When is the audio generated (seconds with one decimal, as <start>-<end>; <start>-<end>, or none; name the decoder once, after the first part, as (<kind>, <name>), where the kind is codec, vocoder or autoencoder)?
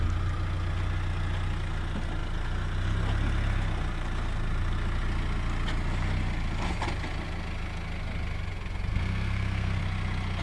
8.9-9.8 (codec, SNAC)